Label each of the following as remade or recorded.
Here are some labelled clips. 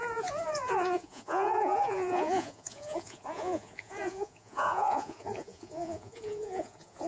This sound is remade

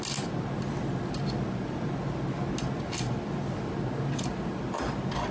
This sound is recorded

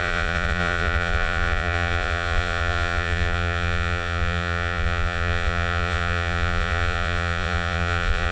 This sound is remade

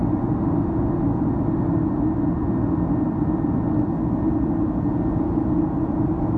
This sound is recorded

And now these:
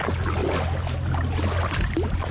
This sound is recorded